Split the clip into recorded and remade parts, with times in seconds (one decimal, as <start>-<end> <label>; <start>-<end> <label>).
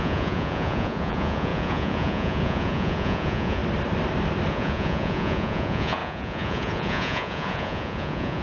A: 0.0-3.6 remade; 3.6-4.5 recorded; 4.5-8.4 remade